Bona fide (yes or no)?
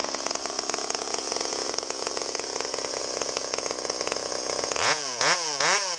no